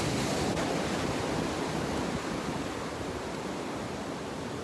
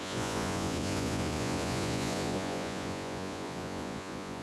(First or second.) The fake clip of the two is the second